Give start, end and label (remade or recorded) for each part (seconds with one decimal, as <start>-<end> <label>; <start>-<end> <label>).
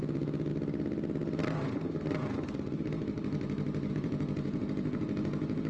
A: 0.0-0.5 remade; 0.5-3.9 recorded; 3.9-5.7 remade